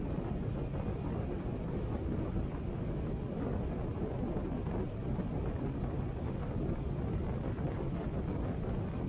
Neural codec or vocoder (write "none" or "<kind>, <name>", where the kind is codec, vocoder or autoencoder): none